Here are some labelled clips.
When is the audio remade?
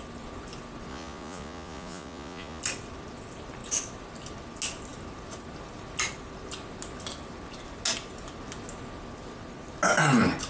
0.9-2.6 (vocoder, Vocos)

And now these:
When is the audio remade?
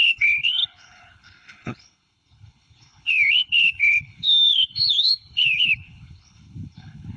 0.0-7.2 (codec, HILCodec)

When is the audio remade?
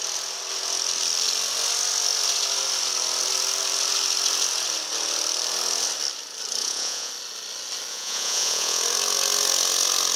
6.6-7.1 (vocoder, Vocos); 7.9-8.8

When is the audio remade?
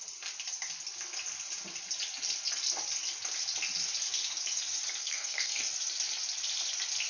5.0-5.6 (codec, SNAC)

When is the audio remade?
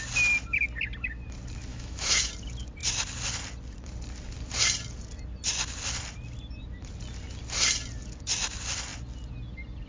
1.7-2.3 (autoencoder, DAC-VAE)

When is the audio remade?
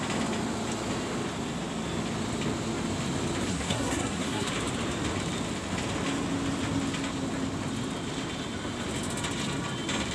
3.5-4.5 (codec, SNAC)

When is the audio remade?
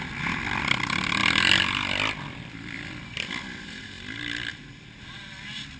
0.0-4.5 (vocoder, BigVGAN v2)